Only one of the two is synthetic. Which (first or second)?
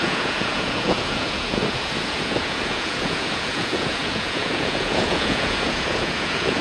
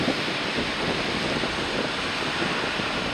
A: first